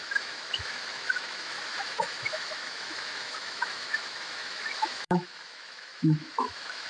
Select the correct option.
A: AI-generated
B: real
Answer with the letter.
A